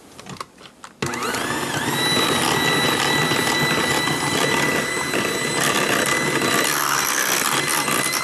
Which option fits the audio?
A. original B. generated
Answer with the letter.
A